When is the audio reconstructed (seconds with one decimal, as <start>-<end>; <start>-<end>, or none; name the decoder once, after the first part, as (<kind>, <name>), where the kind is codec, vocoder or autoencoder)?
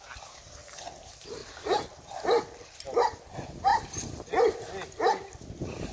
3.7-5.4 (vocoder, BigVGAN v2)